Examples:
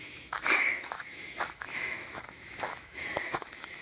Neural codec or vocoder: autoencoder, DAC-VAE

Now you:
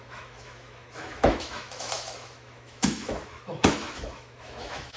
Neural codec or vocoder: autoencoder, DAC-VAE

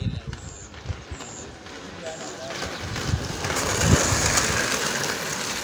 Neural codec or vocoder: none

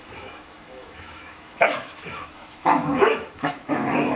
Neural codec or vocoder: autoencoder, DAC-VAE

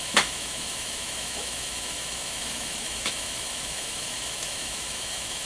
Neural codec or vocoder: autoencoder, DAC-VAE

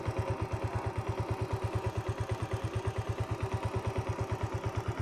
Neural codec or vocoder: none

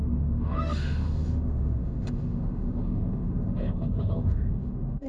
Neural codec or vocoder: autoencoder, DAC-VAE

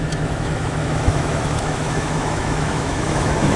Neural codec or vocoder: autoencoder, DAC-VAE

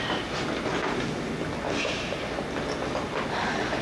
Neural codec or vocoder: none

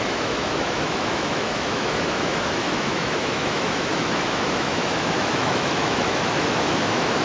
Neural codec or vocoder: autoencoder, DAC-VAE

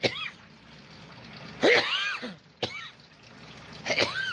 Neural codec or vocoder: none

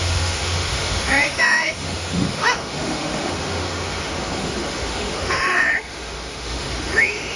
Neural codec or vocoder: autoencoder, DAC-VAE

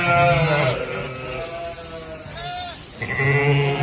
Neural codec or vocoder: none